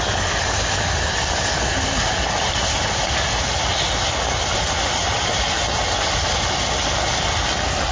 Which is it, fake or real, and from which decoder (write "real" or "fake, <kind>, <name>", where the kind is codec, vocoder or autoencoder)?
real